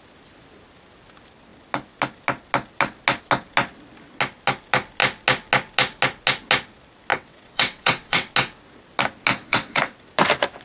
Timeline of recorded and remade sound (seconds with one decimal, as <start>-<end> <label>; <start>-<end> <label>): 0.0-7.1 recorded; 7.1-8.3 remade; 8.3-9.4 recorded; 9.4-10.1 remade; 10.1-10.6 recorded